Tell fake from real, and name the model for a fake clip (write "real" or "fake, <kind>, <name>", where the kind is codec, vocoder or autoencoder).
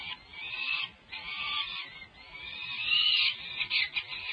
real